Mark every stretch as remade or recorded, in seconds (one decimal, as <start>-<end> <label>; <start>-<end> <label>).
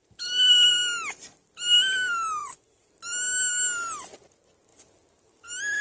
0.0-2.4 recorded; 2.4-2.9 remade; 2.9-5.8 recorded